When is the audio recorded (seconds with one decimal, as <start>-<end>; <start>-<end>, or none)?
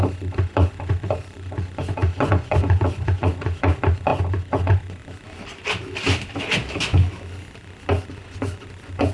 5.0-8.2